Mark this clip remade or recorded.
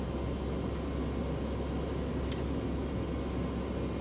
recorded